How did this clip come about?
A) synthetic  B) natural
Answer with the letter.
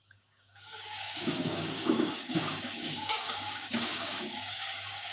A